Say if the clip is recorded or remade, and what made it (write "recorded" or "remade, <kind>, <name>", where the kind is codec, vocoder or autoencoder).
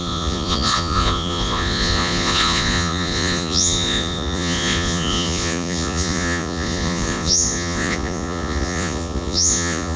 remade, vocoder, Vocos